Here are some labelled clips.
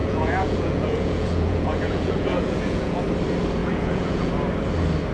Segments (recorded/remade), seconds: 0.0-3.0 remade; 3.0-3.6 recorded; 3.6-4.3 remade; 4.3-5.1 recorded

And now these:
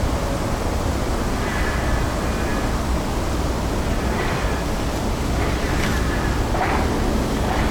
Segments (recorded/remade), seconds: 0.0-7.7 recorded

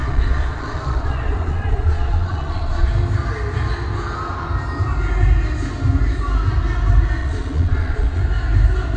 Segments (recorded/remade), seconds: 0.0-2.9 remade; 2.9-7.2 recorded; 7.2-8.2 remade; 8.2-9.0 recorded